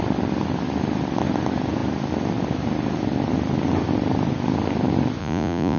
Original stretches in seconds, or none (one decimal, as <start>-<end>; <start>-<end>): 0.0-5.2